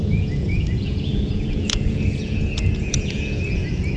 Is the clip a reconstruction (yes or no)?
yes